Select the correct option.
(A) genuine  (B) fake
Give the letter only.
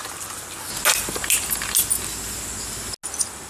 A